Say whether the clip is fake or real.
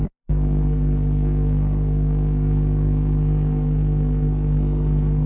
fake